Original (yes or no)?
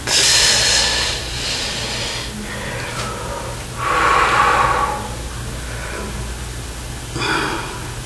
yes